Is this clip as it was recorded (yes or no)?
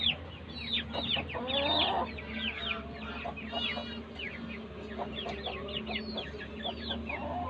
yes